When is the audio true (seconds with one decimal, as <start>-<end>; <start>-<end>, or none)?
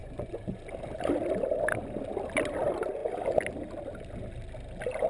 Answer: 0.6-5.1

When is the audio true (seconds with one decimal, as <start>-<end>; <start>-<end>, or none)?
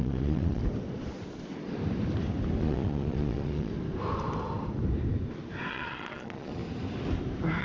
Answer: 0.6-2.6; 3.7-5.7; 6.6-7.6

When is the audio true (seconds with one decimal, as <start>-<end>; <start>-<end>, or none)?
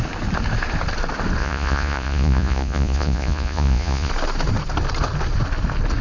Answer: 0.0-1.4; 4.1-6.0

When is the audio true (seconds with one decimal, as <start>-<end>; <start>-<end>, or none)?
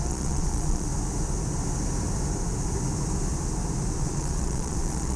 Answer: 0.9-4.0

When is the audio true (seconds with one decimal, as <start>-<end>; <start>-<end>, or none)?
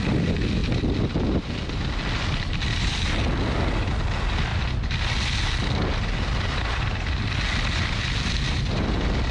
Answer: 0.0-9.3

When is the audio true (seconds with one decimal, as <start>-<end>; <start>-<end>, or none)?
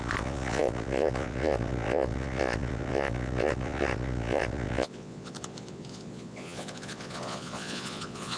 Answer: none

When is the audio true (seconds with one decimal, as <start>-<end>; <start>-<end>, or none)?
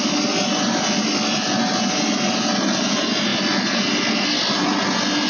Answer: 0.0-5.3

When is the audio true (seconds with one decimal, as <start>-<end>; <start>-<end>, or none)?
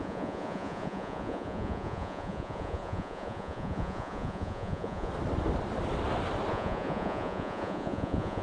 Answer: 5.1-6.5